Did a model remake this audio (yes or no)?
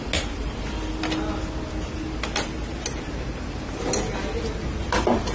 no